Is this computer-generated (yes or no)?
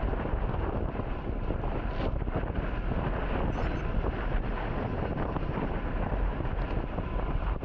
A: no